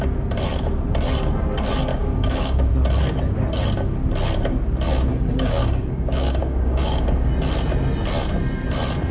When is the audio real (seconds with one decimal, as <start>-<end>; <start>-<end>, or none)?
0.0-1.9; 2.7-5.1; 7.3-9.1